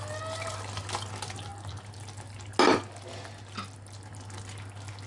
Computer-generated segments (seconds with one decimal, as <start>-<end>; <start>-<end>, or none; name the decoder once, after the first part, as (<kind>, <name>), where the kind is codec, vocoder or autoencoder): none